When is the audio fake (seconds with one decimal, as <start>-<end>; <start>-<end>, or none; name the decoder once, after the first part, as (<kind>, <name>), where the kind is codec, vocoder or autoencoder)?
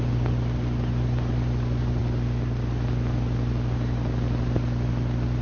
none